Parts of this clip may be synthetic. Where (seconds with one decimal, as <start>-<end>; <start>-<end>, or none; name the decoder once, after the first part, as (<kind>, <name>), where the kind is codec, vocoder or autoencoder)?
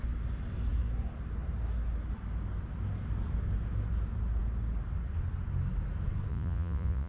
6.3-7.1 (vocoder, Vocos)